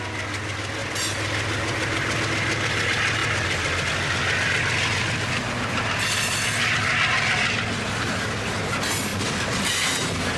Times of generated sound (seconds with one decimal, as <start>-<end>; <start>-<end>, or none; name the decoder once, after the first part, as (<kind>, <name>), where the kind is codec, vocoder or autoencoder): 3.2-3.9 (vocoder, BigVGAN v2)